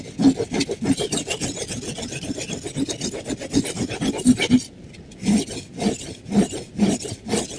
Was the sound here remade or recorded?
recorded